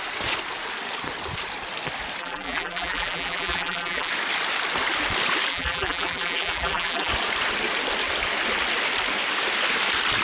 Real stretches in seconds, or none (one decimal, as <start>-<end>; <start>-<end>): 0.0-2.2; 4.1-5.5; 7.1-10.2